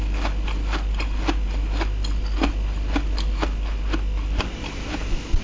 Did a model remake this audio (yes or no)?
no